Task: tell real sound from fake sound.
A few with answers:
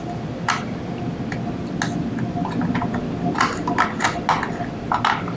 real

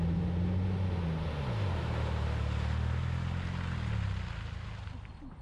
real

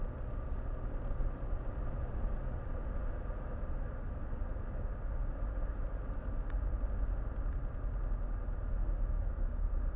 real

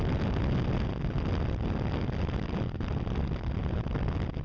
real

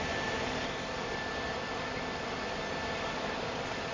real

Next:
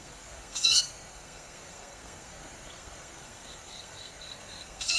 fake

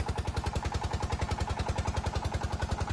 real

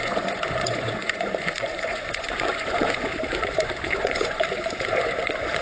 fake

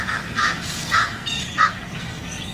fake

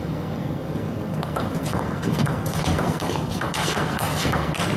fake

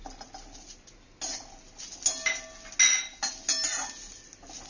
real